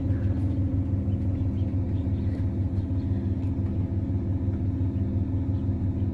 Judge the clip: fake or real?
real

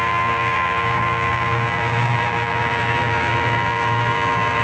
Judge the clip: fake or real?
fake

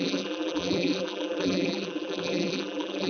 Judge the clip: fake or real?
fake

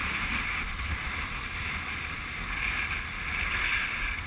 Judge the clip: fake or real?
real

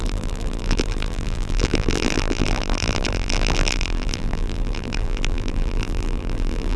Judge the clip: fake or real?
fake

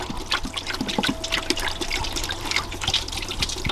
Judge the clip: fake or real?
fake